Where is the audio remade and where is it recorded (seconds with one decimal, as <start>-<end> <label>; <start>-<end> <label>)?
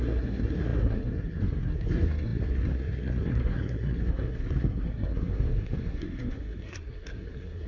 0.0-7.7 remade